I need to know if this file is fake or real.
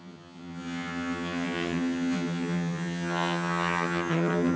fake